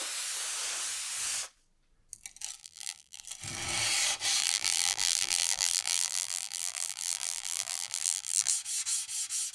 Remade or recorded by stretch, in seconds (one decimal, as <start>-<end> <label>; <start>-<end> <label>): 0.0-2.6 recorded; 2.6-3.2 remade; 3.2-4.4 recorded; 4.4-8.5 remade; 8.5-9.5 recorded

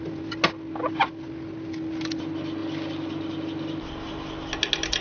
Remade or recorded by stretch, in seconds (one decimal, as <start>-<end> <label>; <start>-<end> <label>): 0.0-5.0 recorded

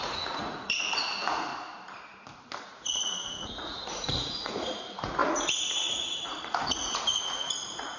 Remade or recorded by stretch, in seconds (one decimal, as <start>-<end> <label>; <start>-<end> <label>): 0.0-1.5 remade; 1.5-2.6 recorded; 2.6-8.0 remade

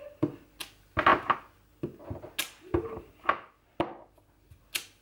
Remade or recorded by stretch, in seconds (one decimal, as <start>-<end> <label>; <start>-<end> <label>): 0.0-5.0 recorded

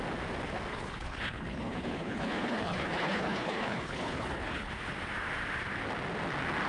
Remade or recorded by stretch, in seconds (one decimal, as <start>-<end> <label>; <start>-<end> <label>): 0.0-0.7 recorded; 0.7-4.7 remade; 4.7-6.7 recorded